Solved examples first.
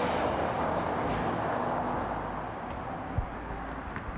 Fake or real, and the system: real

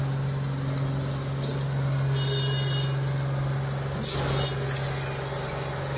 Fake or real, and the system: real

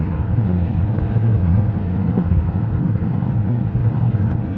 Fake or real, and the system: fake, codec, SNAC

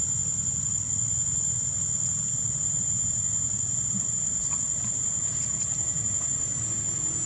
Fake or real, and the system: real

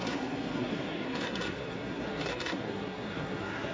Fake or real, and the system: fake, codec, SNAC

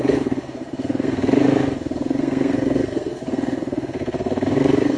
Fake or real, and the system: fake, codec, SNAC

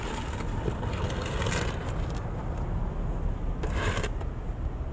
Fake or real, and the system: real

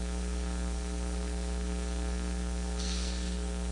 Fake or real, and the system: fake, codec, SNAC